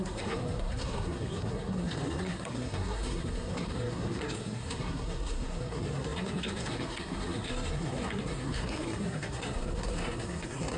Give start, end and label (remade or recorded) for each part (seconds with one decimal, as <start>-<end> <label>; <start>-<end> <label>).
0.0-10.8 remade